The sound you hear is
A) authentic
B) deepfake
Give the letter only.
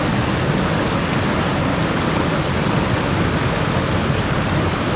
A